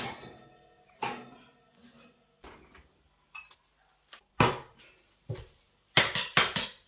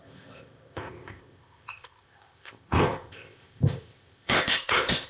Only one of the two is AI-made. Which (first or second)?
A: second